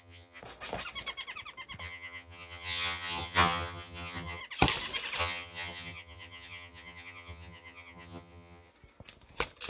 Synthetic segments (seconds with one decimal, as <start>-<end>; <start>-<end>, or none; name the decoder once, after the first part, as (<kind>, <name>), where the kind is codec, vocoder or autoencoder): 0.0-0.4 (vocoder, HiFi-GAN); 1.8-4.4; 5.2-8.7